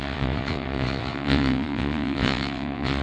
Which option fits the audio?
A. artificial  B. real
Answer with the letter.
A